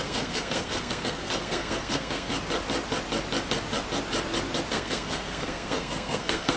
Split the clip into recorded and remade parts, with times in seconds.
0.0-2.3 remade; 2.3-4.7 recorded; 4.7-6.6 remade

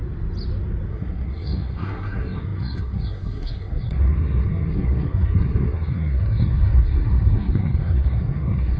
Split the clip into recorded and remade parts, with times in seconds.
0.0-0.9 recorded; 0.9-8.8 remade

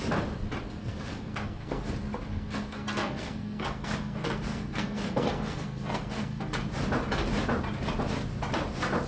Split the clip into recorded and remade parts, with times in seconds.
0.0-0.8 recorded; 0.8-1.8 remade; 1.8-2.3 recorded; 2.3-6.6 remade; 6.6-9.1 recorded